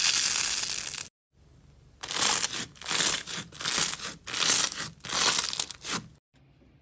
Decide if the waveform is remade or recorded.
recorded